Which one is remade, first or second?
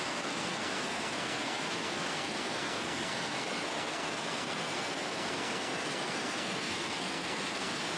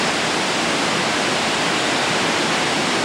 first